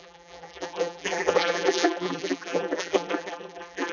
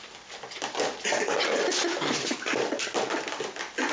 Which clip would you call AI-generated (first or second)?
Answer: first